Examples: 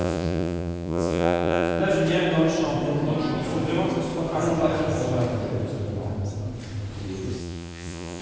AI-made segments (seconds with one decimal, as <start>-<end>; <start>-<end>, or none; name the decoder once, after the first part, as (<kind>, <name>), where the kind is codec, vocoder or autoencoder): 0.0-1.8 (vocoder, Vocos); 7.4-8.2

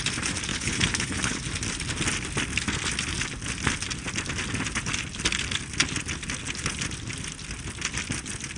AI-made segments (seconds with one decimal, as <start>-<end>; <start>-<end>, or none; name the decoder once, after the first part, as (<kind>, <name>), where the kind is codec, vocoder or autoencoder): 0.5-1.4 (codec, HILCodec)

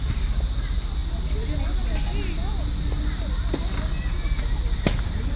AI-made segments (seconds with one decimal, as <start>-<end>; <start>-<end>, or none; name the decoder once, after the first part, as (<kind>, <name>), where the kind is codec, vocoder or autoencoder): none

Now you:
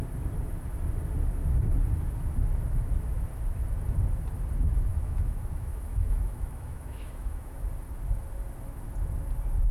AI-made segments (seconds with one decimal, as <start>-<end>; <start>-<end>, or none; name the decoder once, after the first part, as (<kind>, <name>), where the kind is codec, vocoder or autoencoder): 4.9-7.7 (autoencoder, DAC-VAE)

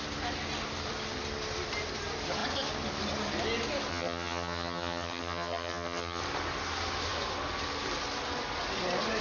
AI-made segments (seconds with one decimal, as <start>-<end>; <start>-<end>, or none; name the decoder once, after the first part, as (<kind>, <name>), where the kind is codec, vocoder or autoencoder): 3.9-6.2 (vocoder, HiFi-GAN)

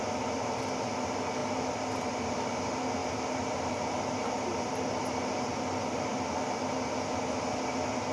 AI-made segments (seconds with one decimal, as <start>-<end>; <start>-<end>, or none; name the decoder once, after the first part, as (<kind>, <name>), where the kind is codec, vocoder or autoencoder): none

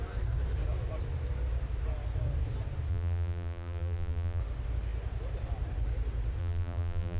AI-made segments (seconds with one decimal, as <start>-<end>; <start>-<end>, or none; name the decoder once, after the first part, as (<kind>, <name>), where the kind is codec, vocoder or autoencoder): 2.9-4.4 (vocoder, BigVGAN v2); 6.4-7.2

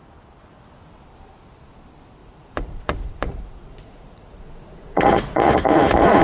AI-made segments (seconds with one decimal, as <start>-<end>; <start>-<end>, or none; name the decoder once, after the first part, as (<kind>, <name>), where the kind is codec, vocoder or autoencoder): 2.2-6.2 (vocoder, Vocos)